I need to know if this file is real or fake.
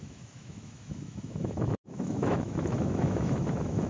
fake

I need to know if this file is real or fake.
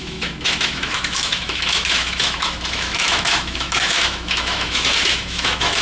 fake